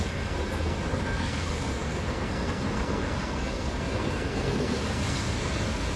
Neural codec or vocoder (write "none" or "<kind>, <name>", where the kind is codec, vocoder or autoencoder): codec, SNAC